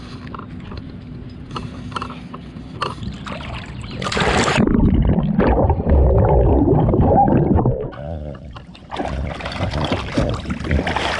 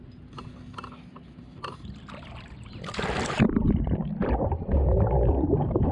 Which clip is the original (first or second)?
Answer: second